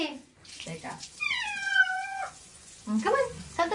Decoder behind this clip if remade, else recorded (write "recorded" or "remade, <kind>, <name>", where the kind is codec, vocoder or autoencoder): remade, vocoder, Vocos